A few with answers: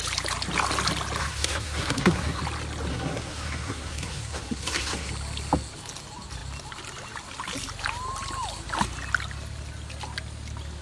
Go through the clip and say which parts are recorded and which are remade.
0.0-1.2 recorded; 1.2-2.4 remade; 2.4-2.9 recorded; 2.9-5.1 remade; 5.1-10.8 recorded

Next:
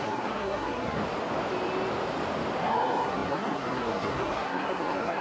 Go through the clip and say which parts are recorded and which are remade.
0.0-1.0 remade; 1.0-2.6 recorded; 2.6-5.2 remade

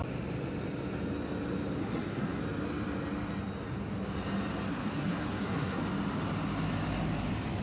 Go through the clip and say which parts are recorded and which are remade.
0.0-1.8 recorded; 1.8-2.4 remade; 2.4-4.7 recorded; 4.7-5.8 remade; 5.8-7.6 recorded